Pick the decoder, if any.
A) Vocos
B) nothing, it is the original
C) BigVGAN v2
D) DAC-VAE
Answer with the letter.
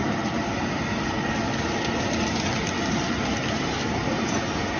C